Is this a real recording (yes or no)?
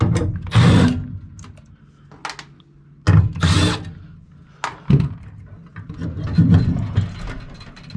yes